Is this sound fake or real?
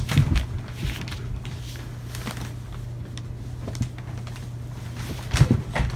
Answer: real